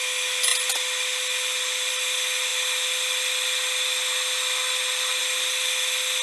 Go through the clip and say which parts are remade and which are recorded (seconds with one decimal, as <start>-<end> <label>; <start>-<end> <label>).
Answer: 0.0-6.2 recorded